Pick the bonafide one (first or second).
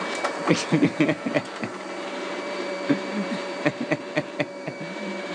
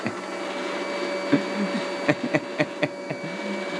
second